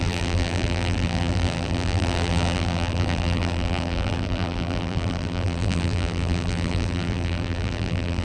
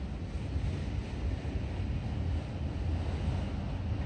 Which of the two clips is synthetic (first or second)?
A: first